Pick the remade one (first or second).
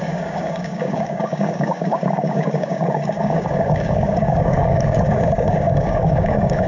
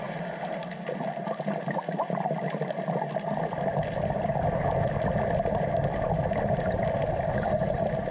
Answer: first